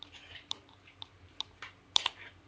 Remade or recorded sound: remade